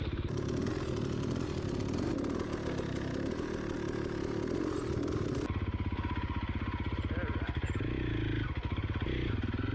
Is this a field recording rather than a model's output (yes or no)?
yes